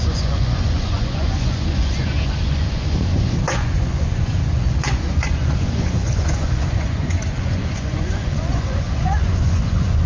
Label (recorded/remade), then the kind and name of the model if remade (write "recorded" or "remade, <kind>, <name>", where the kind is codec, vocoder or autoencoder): remade, vocoder, Vocos